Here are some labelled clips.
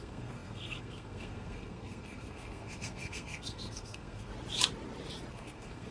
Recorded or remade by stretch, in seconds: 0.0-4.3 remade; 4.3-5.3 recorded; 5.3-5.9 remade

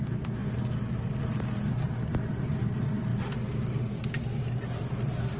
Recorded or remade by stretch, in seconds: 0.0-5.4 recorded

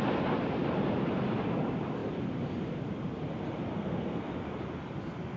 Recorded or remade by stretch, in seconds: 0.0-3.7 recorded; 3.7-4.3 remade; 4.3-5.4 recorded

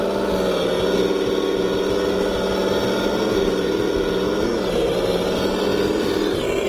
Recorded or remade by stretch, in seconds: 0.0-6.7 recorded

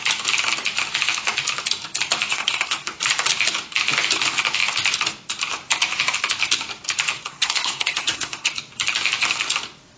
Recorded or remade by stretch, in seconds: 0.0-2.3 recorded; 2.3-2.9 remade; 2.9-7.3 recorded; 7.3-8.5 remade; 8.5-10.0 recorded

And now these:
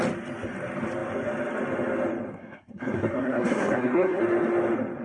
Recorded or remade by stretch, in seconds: 0.0-2.3 recorded; 2.3-4.2 remade; 4.2-5.0 recorded

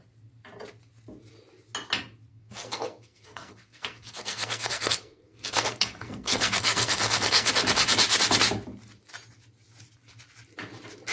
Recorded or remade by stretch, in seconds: 0.0-2.3 recorded; 2.3-7.5 remade; 7.5-11.1 recorded

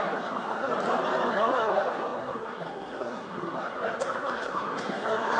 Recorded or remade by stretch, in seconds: 0.0-0.7 remade; 0.7-1.3 recorded; 1.3-5.4 remade